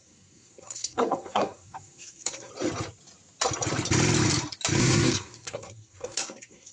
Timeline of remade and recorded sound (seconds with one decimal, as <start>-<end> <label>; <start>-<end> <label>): 0.0-2.5 remade; 2.5-4.8 recorded; 4.8-6.7 remade

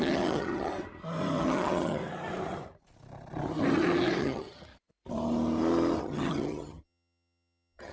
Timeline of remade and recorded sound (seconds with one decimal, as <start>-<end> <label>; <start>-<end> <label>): 0.0-0.7 remade; 0.7-1.4 recorded; 1.4-2.0 remade; 2.0-4.2 recorded; 4.2-4.7 remade; 4.7-6.0 recorded; 6.0-7.9 remade

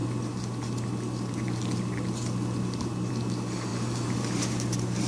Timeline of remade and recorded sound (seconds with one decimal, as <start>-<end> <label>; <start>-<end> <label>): 0.0-3.1 remade; 3.1-3.7 recorded; 3.7-5.1 remade

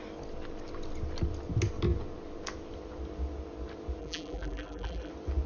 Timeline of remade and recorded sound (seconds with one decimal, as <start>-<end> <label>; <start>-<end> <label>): 0.0-4.0 recorded; 4.0-5.1 remade; 5.1-5.5 recorded

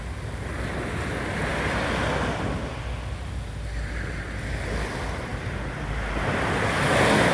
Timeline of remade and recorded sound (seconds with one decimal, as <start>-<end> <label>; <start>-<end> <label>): 0.0-7.3 recorded

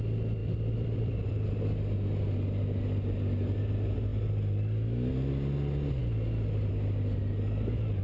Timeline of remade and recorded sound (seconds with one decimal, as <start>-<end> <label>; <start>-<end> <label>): 0.0-0.4 recorded; 0.4-1.5 remade; 1.5-6.0 recorded; 6.0-6.7 remade; 6.7-8.0 recorded

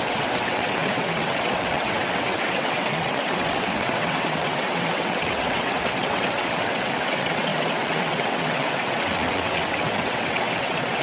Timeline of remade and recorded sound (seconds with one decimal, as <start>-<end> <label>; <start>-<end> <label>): 0.0-11.0 remade

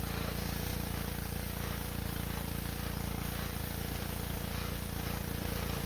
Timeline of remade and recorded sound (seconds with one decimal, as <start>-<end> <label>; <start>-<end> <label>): 0.0-0.7 recorded; 0.7-3.6 remade; 3.6-5.9 recorded